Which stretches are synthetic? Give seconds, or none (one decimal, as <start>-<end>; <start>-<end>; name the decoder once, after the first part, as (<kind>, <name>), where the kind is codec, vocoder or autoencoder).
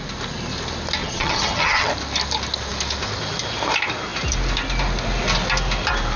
1.0-1.9 (vocoder, HiFi-GAN)